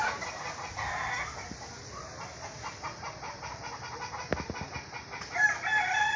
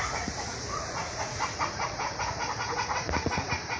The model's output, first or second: second